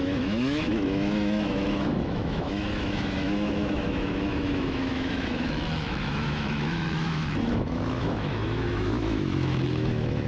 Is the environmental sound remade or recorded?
remade